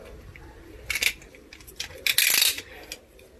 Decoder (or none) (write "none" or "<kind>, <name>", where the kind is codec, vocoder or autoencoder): none